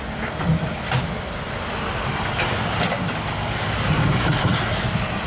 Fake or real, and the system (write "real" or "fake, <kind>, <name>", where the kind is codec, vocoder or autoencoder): real